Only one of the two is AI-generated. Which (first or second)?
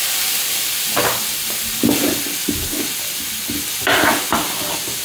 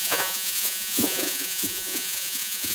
second